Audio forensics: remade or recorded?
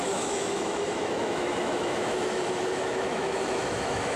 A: remade